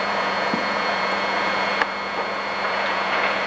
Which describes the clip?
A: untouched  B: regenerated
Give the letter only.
B